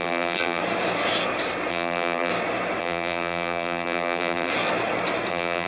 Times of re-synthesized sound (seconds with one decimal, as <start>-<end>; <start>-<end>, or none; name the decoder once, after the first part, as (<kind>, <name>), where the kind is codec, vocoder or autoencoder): 0.0-0.6 (vocoder, BigVGAN v2); 1.7-2.3; 2.8-4.5; 5.3-5.7